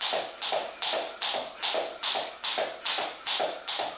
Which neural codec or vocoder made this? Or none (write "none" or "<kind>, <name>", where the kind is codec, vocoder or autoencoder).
none